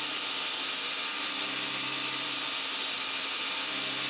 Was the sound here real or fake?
real